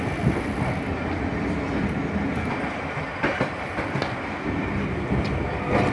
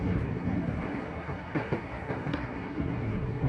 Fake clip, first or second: second